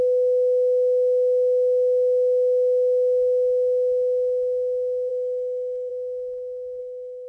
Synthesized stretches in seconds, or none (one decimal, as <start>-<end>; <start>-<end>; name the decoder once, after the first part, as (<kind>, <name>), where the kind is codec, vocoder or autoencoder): 5.1-5.9 (autoencoder, DAC-VAE); 6.8-7.3